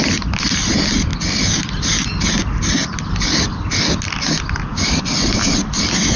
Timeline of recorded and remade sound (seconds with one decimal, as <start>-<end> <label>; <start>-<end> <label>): 0.0-6.2 recorded